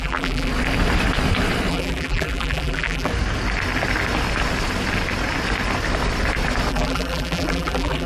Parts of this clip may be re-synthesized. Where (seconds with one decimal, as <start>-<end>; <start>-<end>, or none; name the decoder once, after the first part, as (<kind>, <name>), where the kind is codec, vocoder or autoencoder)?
0.0-0.5 (vocoder, BigVGAN v2); 1.7-3.1; 6.7-8.1